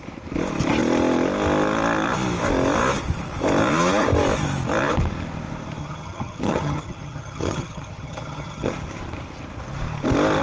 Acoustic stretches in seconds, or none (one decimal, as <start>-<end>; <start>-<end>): 0.0-5.8; 8.7-10.4

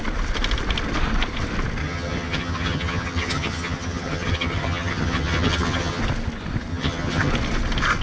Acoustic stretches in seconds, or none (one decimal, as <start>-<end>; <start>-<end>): 0.0-1.8; 6.0-6.7; 7.3-8.0

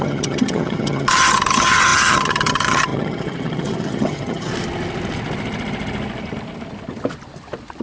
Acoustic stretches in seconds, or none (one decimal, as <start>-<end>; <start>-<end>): 4.5-7.8

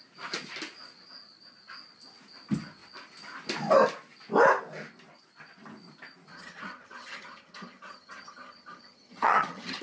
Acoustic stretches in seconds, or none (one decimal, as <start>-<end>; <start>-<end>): 0.0-6.3